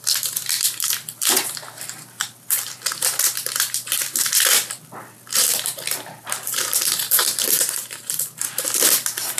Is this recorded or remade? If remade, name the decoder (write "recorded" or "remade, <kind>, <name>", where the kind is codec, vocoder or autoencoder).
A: remade, vocoder, BigVGAN v2